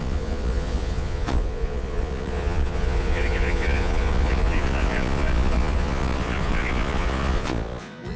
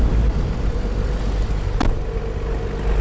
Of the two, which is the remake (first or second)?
first